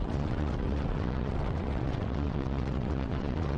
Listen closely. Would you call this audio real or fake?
fake